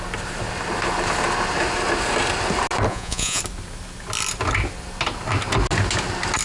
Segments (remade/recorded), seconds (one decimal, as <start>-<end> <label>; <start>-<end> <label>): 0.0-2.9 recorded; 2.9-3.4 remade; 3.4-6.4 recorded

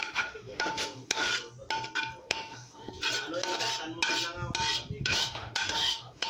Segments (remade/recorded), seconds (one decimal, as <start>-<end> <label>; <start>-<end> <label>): 0.0-1.3 remade; 1.3-2.2 recorded; 2.2-2.9 remade; 2.9-5.0 recorded; 5.0-6.3 remade

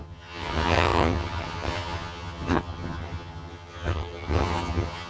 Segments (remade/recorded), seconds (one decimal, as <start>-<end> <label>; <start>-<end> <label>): 0.0-5.1 remade

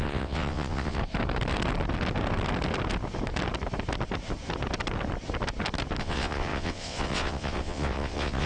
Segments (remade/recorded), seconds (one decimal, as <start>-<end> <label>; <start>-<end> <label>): 0.0-1.0 remade; 1.0-6.0 recorded; 6.0-8.5 remade

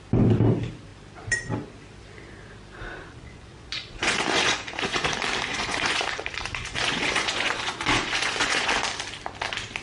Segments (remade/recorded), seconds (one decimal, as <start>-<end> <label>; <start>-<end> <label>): 0.0-3.0 recorded; 3.0-5.1 remade; 5.1-5.5 recorded; 5.5-8.7 remade; 8.7-9.8 recorded

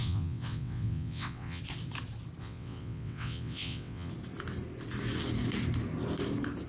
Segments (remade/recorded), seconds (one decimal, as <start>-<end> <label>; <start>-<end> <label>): 0.0-1.6 remade; 1.6-2.4 recorded; 2.4-4.1 remade; 4.1-6.7 recorded

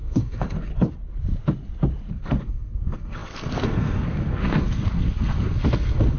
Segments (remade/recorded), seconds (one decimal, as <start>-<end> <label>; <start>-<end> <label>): 0.0-0.7 remade; 0.7-2.2 recorded; 2.2-6.2 remade